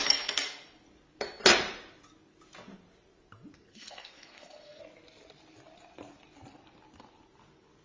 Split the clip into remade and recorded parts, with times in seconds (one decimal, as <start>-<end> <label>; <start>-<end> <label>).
0.0-3.7 recorded; 3.7-4.8 remade; 4.8-7.8 recorded